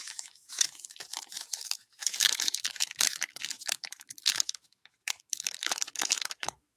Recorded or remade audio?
remade